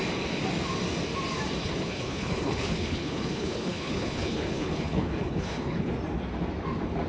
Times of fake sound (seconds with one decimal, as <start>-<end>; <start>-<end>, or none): 1.6-5.9